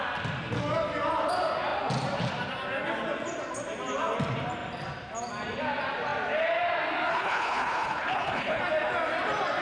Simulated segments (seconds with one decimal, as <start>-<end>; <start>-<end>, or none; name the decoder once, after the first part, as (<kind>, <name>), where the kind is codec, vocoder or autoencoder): 7.1-8.6 (codec, HILCodec)